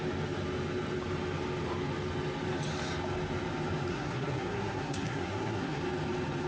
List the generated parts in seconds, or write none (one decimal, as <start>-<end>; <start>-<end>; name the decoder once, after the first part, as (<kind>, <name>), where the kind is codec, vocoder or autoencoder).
3.9-5.8 (codec, SNAC)